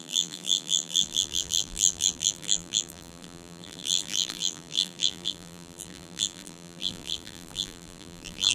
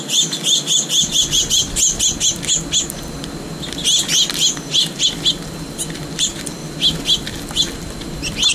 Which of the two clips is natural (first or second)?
second